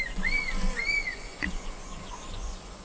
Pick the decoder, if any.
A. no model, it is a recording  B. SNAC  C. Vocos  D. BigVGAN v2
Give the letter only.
C